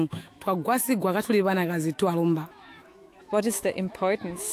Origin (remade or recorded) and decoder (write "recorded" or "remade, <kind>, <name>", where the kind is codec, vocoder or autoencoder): remade, autoencoder, DAC-VAE